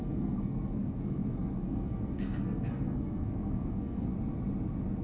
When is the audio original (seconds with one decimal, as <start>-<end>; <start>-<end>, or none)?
4.1-5.0